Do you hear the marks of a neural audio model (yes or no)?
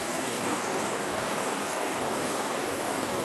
yes